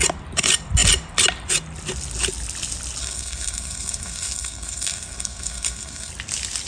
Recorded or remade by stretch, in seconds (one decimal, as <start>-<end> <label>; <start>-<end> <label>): 0.0-3.0 recorded; 3.0-6.1 remade; 6.1-6.7 recorded